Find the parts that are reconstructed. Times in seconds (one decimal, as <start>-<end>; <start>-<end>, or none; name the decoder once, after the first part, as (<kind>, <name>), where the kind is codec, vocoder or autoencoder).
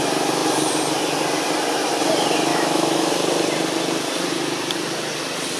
2.5-3.1 (autoencoder, DAC-VAE)